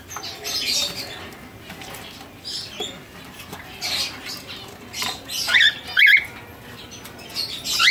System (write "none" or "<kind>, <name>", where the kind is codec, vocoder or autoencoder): none